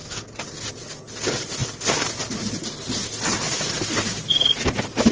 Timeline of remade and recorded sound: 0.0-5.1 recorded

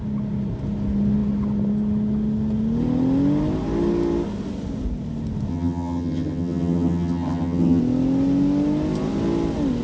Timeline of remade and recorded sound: 0.0-5.5 recorded; 5.5-7.8 remade; 7.8-9.8 recorded

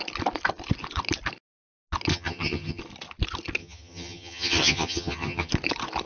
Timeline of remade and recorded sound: 0.0-2.1 recorded; 2.1-2.8 remade; 2.8-3.6 recorded; 3.6-5.5 remade; 5.5-6.1 recorded

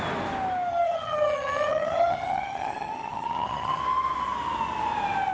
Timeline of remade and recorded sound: 0.0-0.7 recorded; 0.7-3.8 remade; 3.8-5.3 recorded

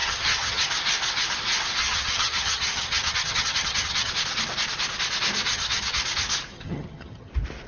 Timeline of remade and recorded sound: 0.0-0.6 remade; 0.6-1.8 recorded; 1.8-4.1 remade; 4.1-5.5 recorded; 5.5-6.0 remade; 6.0-6.5 recorded; 6.5-7.3 remade; 7.3-7.7 recorded